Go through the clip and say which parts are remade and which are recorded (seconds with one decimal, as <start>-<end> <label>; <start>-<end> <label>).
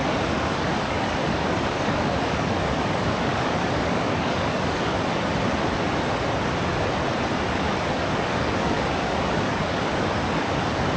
0.0-4.9 remade; 4.9-7.5 recorded; 7.5-11.0 remade